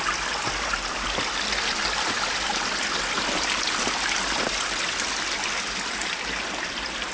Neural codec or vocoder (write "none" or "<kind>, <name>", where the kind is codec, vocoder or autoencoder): none